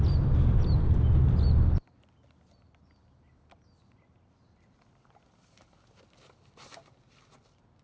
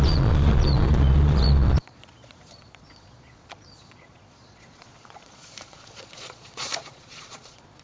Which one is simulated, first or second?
second